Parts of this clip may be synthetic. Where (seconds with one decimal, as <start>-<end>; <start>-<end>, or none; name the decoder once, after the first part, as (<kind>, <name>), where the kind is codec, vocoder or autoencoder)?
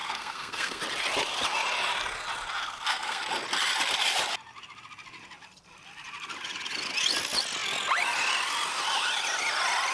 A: 0.0-0.8 (codec, SNAC); 2.6-3.2